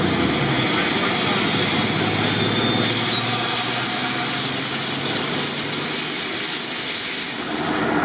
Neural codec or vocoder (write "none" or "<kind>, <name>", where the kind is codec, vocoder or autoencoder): none